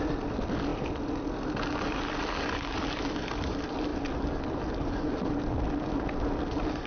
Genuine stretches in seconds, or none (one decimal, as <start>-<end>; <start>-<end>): 0.0-6.9